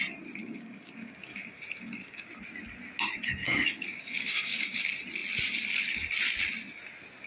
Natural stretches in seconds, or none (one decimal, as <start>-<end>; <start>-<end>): 0.0-0.4; 2.3-3.4; 4.8-7.3